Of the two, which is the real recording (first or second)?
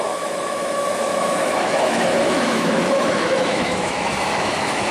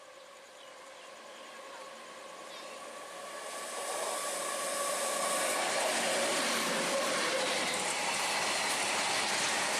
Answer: second